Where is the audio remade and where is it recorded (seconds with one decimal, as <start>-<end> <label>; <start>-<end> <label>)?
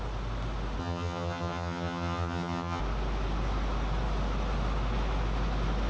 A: 0.0-0.8 recorded; 0.8-2.8 remade; 2.8-5.9 recorded